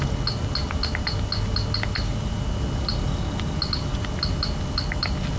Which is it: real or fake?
real